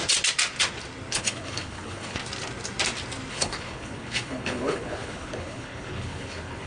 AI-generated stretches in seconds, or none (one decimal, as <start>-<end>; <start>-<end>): 1.1-2.2; 3.3-6.7